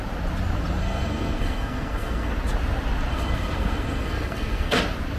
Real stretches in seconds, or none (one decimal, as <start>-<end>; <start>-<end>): 0.0-0.8; 2.3-3.1; 4.8-5.2